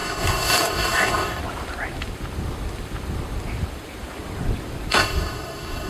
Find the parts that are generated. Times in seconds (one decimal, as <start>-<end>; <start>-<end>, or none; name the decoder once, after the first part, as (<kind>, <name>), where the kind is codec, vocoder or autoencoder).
0.0-1.4 (codec, DAC); 4.9-5.9